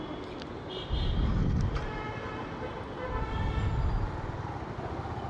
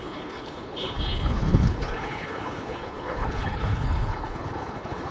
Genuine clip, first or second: first